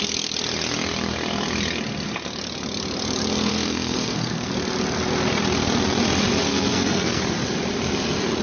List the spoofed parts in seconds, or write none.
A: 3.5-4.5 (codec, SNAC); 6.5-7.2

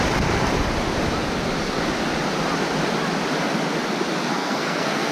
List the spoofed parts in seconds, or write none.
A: 4.3-5.1 (codec, SNAC)